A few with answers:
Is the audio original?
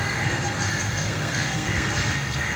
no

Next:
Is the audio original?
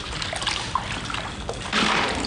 yes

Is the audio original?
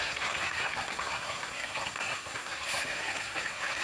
no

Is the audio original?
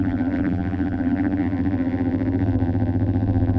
no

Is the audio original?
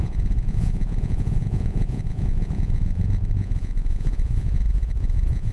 no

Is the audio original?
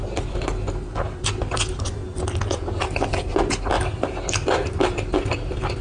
yes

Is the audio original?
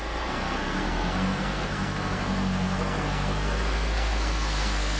no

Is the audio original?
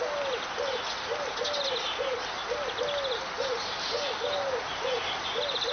yes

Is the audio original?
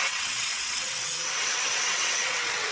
no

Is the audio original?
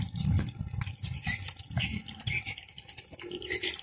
yes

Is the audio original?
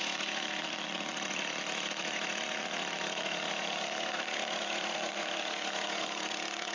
no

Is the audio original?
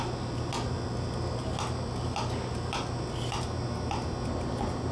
yes